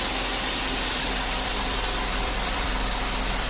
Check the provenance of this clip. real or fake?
fake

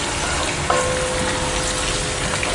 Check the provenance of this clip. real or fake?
real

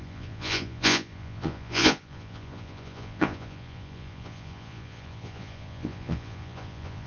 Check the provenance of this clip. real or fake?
fake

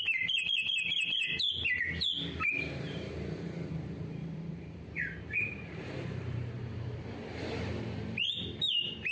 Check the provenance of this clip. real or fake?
fake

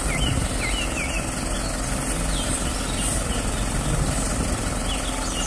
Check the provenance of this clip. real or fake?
real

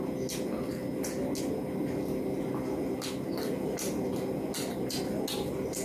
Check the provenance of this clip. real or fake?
real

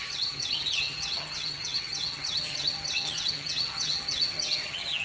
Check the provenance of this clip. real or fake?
fake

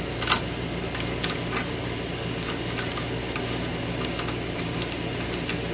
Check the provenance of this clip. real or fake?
real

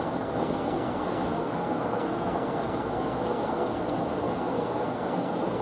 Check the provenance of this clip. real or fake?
fake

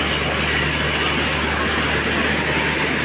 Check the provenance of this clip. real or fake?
real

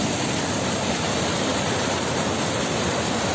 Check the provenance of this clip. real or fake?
fake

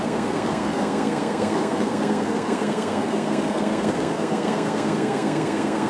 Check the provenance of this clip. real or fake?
fake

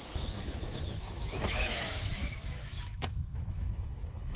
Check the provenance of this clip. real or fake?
fake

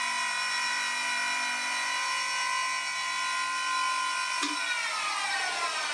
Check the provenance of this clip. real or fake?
real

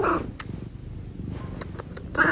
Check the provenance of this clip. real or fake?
real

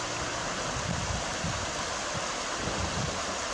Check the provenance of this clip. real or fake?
real